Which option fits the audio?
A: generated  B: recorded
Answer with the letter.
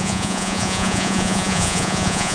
A